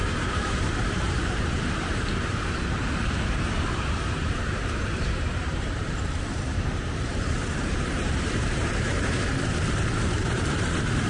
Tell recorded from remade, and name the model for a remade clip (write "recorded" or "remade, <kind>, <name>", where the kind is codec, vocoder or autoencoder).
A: remade, vocoder, BigVGAN v2